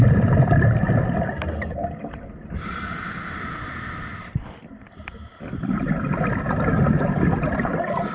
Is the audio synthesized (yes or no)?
no